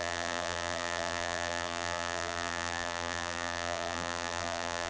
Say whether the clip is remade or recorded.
remade